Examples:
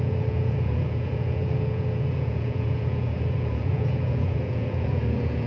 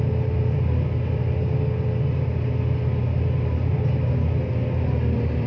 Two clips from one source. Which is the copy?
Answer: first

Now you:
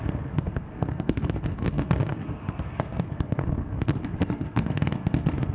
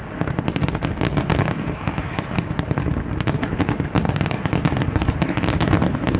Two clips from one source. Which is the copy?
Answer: first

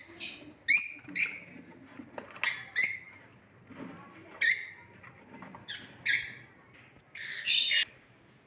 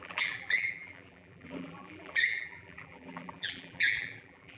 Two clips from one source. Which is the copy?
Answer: second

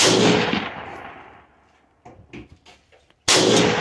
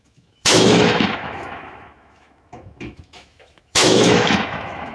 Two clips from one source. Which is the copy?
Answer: second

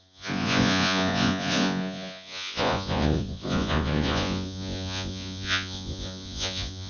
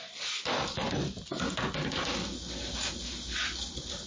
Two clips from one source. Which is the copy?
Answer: first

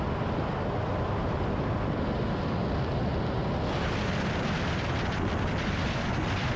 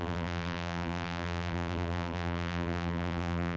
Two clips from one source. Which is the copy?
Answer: second